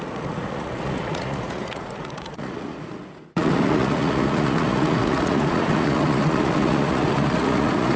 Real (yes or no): no